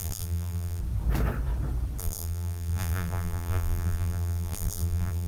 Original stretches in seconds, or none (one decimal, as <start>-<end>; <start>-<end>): 0.8-2.0

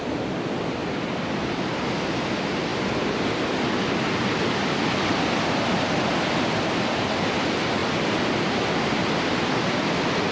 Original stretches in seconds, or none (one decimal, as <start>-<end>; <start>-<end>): 0.0-10.3

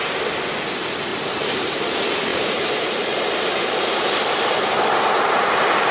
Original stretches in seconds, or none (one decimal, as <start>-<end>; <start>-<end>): 0.0-1.1; 1.8-2.3

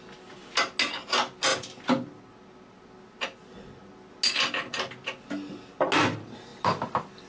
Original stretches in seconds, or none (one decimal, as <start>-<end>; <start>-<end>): 0.0-6.5